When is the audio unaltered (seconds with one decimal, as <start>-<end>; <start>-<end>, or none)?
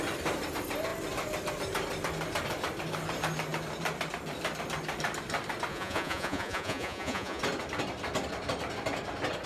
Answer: 0.0-5.7; 7.4-9.5